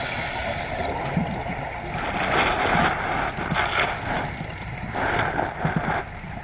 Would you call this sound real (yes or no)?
yes